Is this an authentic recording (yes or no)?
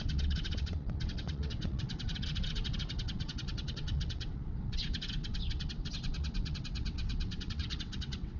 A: no